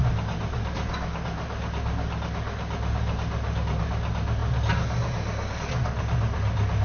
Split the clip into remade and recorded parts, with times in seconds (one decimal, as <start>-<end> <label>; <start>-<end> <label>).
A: 0.0-6.8 recorded